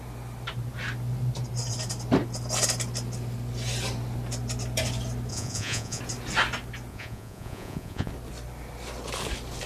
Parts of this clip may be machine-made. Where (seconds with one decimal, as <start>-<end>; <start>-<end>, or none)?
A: 5.3-6.0; 6.9-8.1